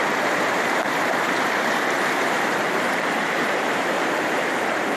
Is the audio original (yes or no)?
no